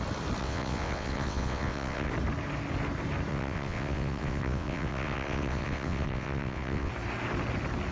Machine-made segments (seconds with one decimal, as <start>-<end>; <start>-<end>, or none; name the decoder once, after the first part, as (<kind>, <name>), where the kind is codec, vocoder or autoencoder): 0.4-2.1 (vocoder, WaveNeXt); 3.3-6.9